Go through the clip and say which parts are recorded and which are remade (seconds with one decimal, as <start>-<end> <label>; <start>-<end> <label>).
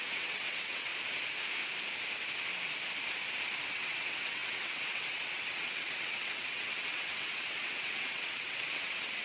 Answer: 0.0-0.9 remade; 0.9-3.7 recorded; 3.7-9.2 remade